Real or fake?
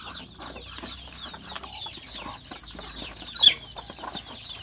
real